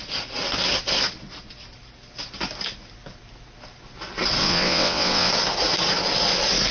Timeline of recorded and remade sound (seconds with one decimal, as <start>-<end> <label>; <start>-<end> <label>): 0.0-4.4 recorded; 4.4-5.3 remade; 5.3-6.7 recorded